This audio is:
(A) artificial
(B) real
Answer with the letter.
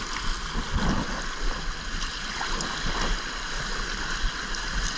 B